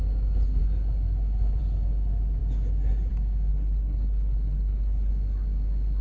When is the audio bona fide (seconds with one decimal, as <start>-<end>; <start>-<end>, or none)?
0.0-3.5; 5.1-6.0